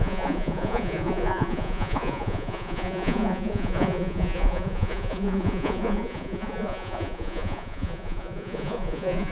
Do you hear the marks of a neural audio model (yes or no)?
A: yes